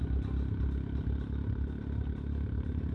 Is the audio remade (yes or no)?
no